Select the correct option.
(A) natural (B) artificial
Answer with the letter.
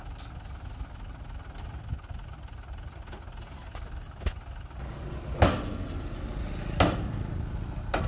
A